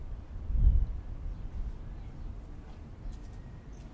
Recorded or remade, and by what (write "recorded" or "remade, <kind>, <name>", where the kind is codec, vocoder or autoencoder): recorded